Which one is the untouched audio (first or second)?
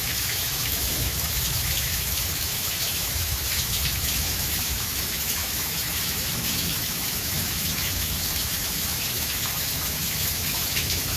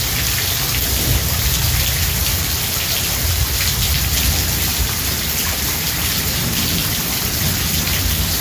second